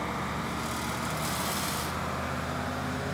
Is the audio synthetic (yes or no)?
no